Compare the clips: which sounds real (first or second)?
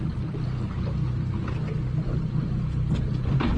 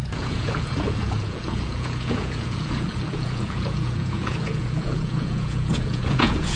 first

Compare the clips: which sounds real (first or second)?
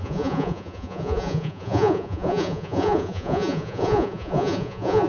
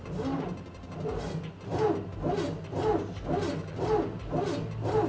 second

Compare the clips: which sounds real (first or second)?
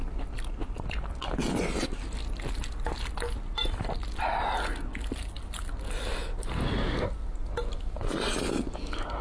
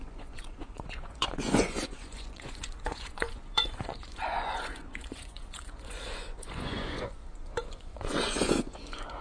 first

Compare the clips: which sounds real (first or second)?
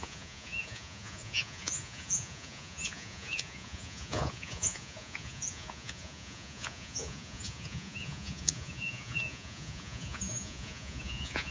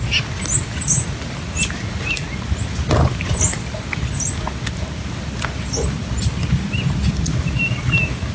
second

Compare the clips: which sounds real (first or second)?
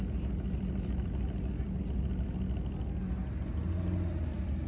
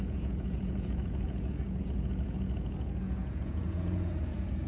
first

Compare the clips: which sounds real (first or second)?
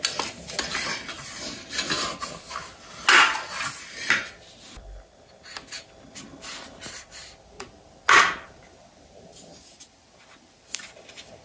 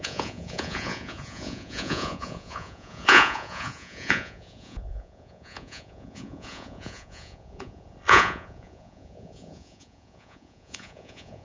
first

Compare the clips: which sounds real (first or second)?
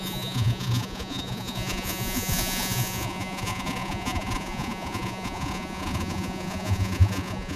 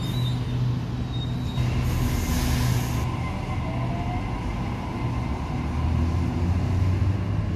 second